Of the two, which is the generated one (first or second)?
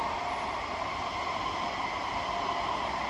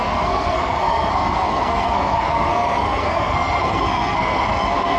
second